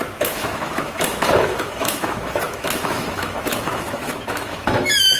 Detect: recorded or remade remade